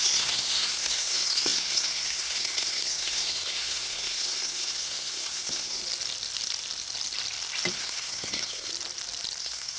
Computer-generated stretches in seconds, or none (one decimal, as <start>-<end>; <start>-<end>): 0.0-5.8; 7.7-8.7; 9.4-9.8